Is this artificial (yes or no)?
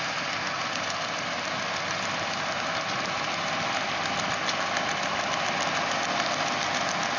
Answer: no